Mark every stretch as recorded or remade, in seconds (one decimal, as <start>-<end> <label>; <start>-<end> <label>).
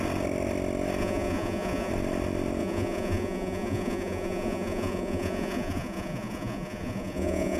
0.0-1.0 recorded; 1.0-1.9 remade; 1.9-2.6 recorded; 2.6-7.6 remade